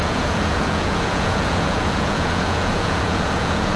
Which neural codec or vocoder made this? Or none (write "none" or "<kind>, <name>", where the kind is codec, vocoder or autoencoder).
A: vocoder, Vocos